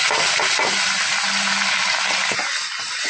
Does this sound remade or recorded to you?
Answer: recorded